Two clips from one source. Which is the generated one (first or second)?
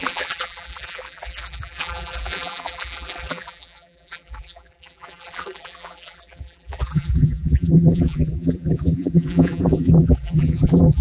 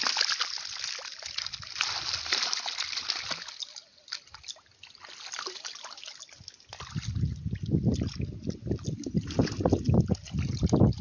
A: first